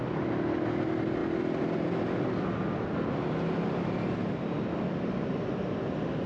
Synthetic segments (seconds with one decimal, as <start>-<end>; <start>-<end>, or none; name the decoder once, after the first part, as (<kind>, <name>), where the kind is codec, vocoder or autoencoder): none